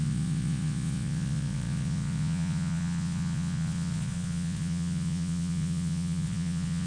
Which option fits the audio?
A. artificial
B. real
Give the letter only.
A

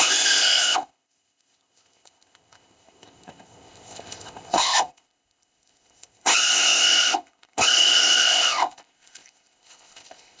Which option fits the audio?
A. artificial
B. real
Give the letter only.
A